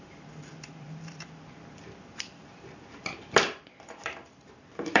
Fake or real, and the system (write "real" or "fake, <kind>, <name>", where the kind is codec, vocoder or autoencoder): fake, vocoder, BigVGAN v2